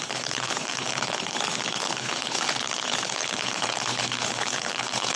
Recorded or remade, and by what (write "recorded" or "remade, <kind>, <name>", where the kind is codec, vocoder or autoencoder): remade, codec, HILCodec